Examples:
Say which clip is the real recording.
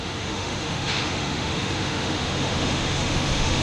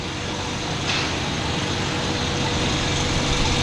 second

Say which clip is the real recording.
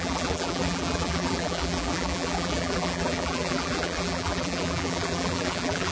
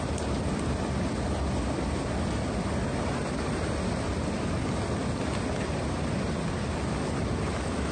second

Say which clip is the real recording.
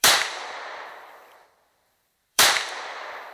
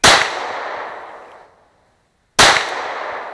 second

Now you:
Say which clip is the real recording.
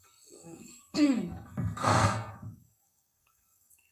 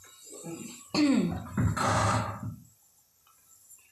second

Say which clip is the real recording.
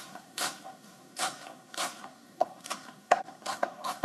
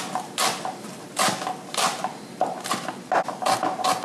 second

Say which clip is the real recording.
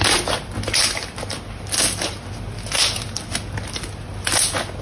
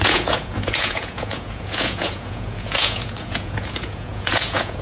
first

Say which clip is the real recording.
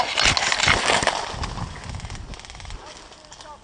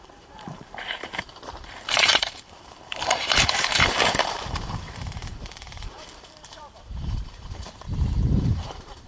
first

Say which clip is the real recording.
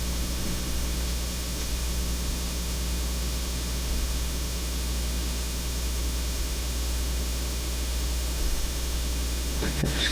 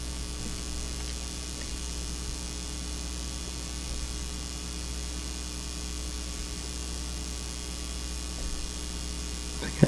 second